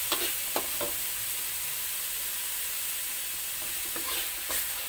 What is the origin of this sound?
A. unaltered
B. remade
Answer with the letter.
A